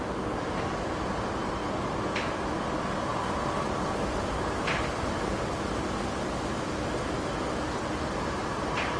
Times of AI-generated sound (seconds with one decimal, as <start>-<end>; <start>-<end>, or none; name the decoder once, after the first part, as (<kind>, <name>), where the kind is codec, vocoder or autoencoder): none